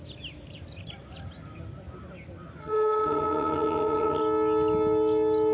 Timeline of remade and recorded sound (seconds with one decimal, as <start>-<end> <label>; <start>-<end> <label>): 0.0-2.6 recorded; 2.6-4.2 remade; 4.2-5.5 recorded